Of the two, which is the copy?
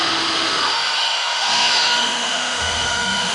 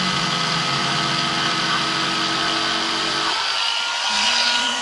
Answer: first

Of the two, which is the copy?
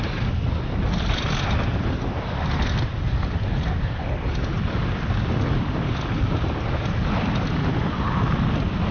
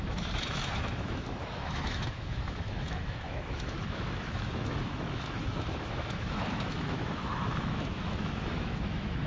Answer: second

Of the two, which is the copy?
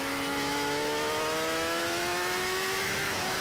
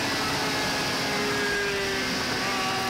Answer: first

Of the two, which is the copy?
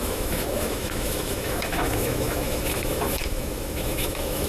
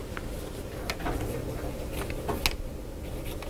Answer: first